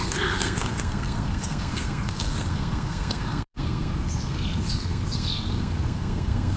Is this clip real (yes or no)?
no